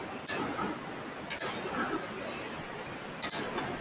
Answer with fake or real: real